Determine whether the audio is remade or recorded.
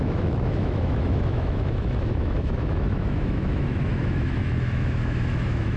remade